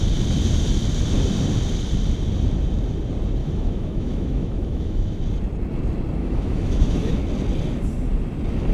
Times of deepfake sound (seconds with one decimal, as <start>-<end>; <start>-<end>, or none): 3.4-5.2; 6.2-7.2